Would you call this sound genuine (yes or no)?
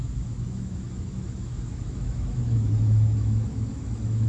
no